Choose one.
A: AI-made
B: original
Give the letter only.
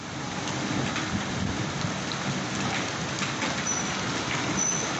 B